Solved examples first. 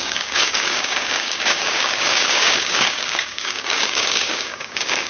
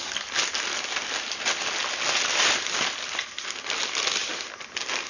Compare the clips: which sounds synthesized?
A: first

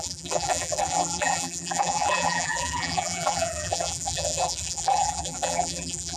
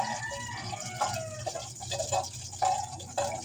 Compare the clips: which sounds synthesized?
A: first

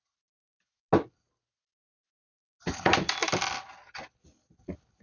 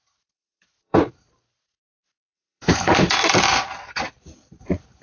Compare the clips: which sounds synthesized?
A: second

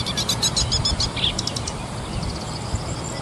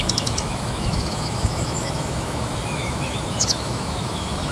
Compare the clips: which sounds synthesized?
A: second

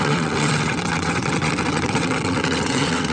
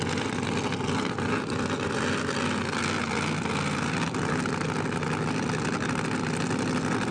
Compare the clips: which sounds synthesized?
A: first